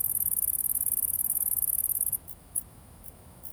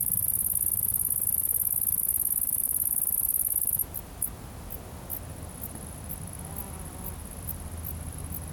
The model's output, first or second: first